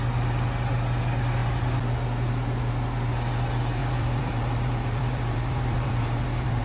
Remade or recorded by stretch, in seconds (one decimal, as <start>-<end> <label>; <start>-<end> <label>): 0.0-3.8 recorded; 3.8-6.6 remade

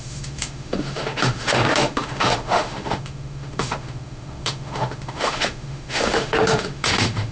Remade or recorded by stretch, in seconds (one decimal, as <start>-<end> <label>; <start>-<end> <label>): 0.0-7.3 remade

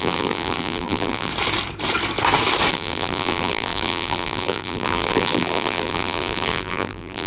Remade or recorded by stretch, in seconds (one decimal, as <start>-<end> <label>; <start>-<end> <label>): 0.0-1.3 remade; 1.3-2.7 recorded; 2.7-7.3 remade

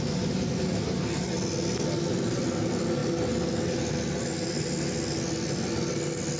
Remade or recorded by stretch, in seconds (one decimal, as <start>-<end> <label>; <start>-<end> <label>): 0.0-6.4 recorded

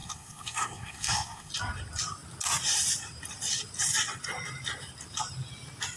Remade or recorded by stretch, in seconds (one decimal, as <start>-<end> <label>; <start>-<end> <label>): 0.0-1.5 remade; 1.5-6.0 recorded